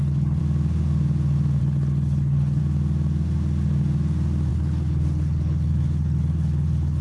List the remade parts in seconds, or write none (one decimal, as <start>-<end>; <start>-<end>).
0.0-0.4; 1.6-2.6; 4.5-7.0